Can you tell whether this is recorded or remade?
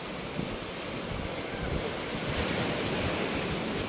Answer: recorded